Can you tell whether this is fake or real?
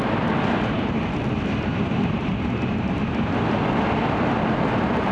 real